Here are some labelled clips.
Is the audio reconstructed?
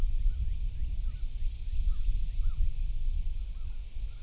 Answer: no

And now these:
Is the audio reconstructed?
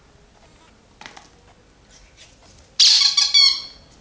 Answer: no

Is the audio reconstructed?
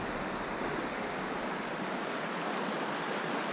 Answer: no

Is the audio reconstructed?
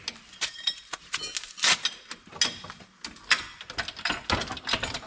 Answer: no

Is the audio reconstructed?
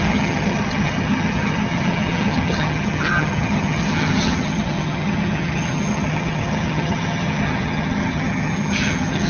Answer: yes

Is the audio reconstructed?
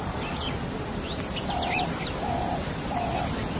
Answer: no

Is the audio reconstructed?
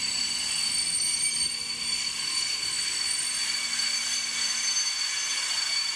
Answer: no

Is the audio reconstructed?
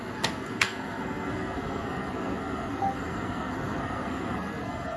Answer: yes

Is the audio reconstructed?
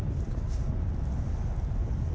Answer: no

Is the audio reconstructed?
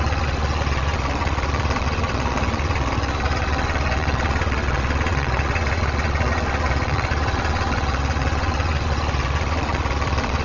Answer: yes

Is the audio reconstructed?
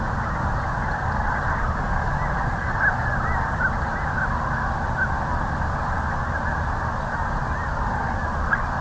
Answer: no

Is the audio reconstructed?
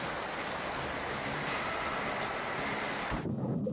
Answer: no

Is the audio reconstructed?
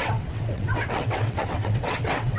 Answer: yes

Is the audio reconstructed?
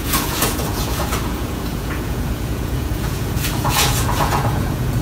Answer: yes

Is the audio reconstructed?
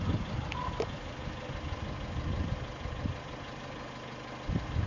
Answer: no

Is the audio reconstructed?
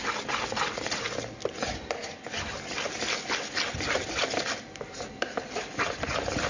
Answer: no